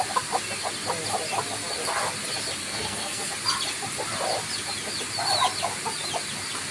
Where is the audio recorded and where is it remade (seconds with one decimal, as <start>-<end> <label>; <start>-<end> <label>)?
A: 0.0-2.6 recorded; 2.6-3.3 remade; 3.3-6.7 recorded